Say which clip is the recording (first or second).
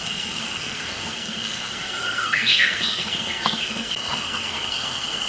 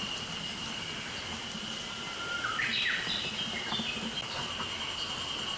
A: second